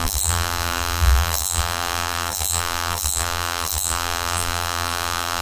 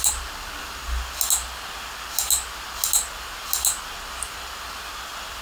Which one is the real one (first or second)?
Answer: second